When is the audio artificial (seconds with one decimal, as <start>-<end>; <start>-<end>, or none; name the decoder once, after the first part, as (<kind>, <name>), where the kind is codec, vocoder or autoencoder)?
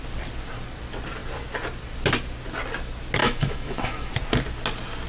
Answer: 3.2-4.1 (autoencoder, DAC-VAE)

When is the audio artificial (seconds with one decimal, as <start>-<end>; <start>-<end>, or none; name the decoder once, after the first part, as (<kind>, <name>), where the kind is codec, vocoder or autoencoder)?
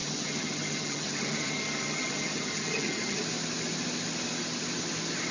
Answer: 0.0-3.2 (vocoder, HiFi-GAN)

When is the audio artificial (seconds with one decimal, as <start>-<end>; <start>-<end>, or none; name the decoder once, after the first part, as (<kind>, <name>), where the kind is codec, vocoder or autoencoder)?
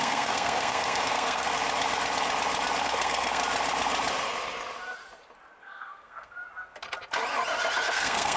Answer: 0.0-1.5 (codec, SNAC); 2.8-3.4; 5.6-6.4; 7.9-8.4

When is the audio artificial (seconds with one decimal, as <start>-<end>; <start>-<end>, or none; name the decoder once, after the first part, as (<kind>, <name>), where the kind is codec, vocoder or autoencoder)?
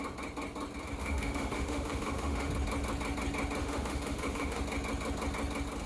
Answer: 1.0-2.5 (autoencoder, DAC-VAE); 3.6-4.6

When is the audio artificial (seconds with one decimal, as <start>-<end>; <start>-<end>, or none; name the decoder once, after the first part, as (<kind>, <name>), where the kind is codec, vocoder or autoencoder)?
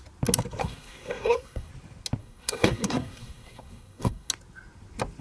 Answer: 0.6-1.7 (codec, SNAC); 2.2-4.3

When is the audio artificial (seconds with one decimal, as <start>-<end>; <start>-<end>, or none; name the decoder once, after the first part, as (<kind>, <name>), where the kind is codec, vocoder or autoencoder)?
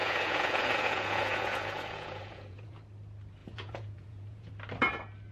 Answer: 0.0-2.8 (vocoder, Vocos); 3.4-4.5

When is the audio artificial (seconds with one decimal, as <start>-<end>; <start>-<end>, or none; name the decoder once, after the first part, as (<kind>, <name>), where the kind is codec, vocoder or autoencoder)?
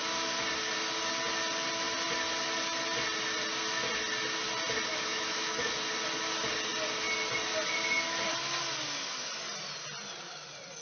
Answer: 4.9-5.7 (autoencoder, DAC-VAE)